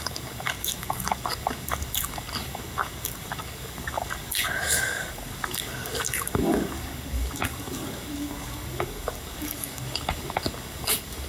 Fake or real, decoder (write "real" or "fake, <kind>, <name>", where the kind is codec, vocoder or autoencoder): fake, codec, DAC